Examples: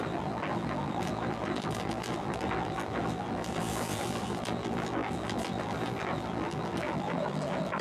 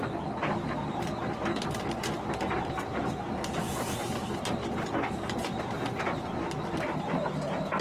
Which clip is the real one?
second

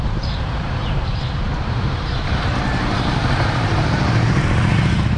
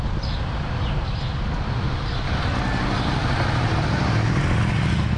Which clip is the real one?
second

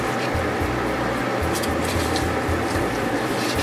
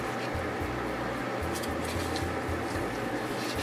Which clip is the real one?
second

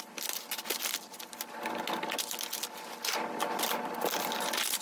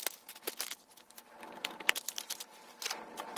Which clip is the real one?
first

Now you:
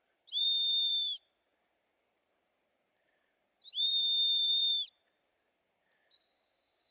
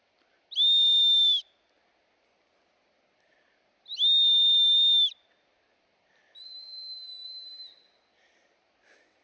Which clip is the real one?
second